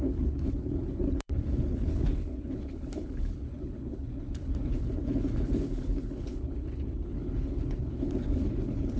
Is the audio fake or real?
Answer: fake